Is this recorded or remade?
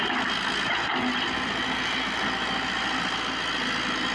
recorded